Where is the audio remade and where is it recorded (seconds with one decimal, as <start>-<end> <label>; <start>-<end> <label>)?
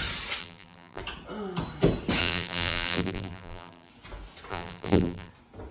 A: 0.0-0.4 recorded; 0.4-1.0 remade; 1.0-2.2 recorded; 2.2-3.9 remade; 3.9-4.5 recorded; 4.5-5.3 remade; 5.3-5.7 recorded